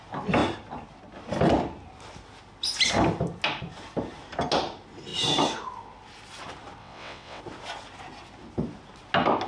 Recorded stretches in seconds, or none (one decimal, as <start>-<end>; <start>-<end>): 0.0-6.8; 7.4-9.5